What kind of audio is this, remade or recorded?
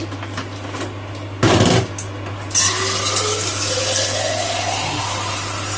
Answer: recorded